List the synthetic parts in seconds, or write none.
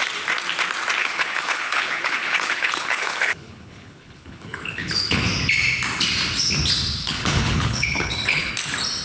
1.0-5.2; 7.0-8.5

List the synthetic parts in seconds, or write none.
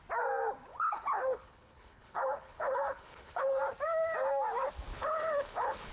0.7-3.6; 4.9-5.9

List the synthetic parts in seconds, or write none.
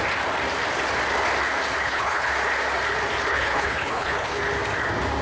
1.8-2.3; 3.3-4.4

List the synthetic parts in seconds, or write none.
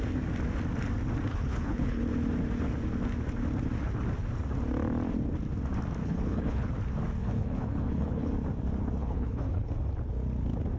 1.3-2.0; 6.0-6.7; 7.2-8.3; 9.0-9.7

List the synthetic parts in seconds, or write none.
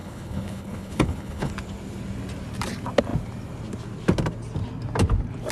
0.0-1.5